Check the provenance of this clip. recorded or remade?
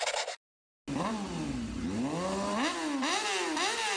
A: recorded